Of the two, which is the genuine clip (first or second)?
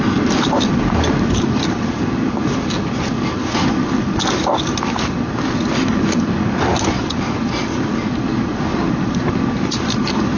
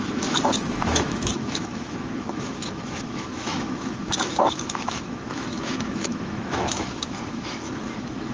first